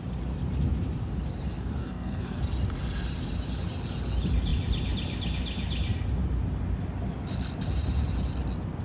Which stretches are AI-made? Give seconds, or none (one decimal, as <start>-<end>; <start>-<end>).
1.8-2.4